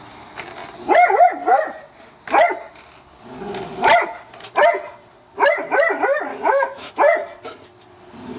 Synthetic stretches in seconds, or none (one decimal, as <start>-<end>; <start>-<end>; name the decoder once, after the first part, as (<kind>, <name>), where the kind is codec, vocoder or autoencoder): 6.3-6.9 (autoencoder, DAC-VAE)